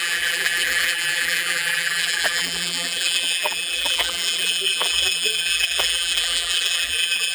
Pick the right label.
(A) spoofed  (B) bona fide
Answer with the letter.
A